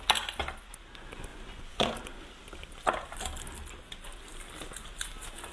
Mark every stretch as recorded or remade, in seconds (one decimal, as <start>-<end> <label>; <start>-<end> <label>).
0.0-1.3 recorded; 1.3-1.9 remade; 1.9-5.5 recorded